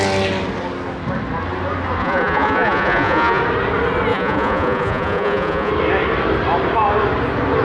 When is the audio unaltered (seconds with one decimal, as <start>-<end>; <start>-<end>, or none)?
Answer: 0.0-2.0; 3.4-4.1; 5.7-7.6